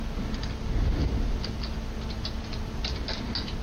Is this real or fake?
real